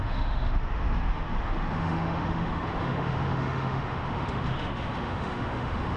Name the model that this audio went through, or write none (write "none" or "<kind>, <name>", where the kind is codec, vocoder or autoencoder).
autoencoder, DAC-VAE